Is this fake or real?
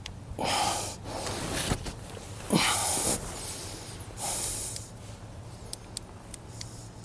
real